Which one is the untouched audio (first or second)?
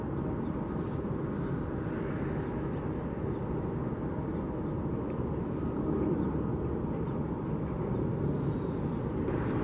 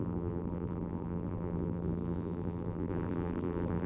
first